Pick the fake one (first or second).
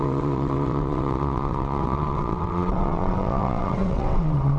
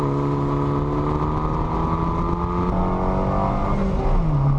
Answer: first